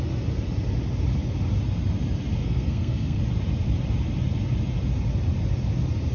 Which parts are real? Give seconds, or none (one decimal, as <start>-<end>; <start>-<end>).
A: 0.0-2.4; 3.2-6.1